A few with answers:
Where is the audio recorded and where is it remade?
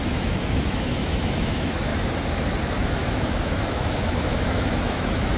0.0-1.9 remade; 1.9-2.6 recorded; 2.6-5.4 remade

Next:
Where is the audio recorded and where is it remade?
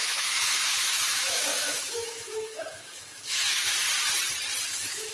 0.0-3.8 remade; 3.8-4.6 recorded; 4.6-5.1 remade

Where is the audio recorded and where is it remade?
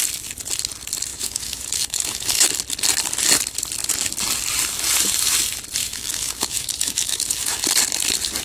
0.0-1.1 recorded; 1.1-2.5 remade; 2.5-5.8 recorded; 5.8-7.6 remade; 7.6-8.4 recorded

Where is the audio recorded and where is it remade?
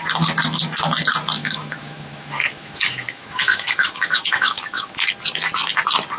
0.0-1.4 recorded; 1.4-5.1 remade; 5.1-6.2 recorded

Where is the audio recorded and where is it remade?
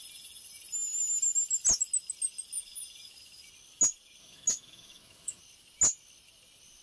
0.0-4.2 recorded; 4.2-5.4 remade; 5.4-6.8 recorded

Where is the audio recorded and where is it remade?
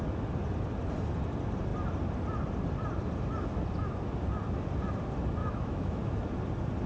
0.0-5.4 recorded; 5.4-6.2 remade; 6.2-6.9 recorded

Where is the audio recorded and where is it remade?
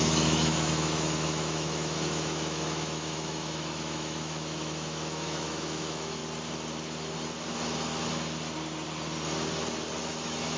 0.0-6.2 remade; 6.2-10.0 recorded; 10.0-10.6 remade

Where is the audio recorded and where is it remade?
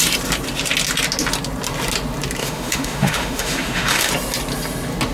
0.0-2.4 recorded; 2.4-4.1 remade; 4.1-5.1 recorded